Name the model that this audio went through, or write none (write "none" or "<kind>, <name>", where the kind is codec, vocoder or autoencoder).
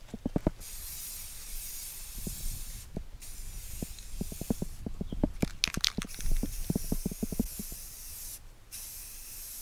none